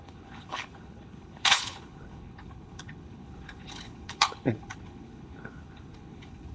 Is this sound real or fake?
fake